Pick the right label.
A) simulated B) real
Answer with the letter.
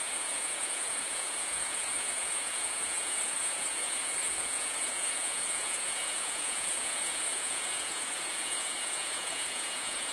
A